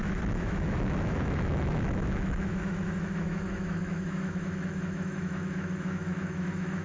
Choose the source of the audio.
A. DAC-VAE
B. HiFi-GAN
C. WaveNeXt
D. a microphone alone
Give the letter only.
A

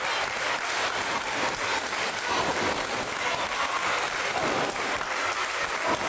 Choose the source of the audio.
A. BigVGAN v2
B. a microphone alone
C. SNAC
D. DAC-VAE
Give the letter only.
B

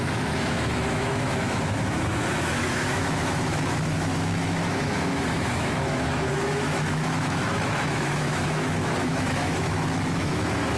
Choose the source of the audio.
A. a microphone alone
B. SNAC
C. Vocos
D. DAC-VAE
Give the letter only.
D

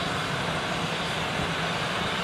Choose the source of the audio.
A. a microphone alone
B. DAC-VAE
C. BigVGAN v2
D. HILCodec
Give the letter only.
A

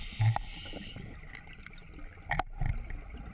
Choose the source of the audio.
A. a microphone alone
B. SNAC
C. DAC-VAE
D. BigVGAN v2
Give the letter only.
A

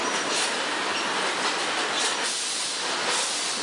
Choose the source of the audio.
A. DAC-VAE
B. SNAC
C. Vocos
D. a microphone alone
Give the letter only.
D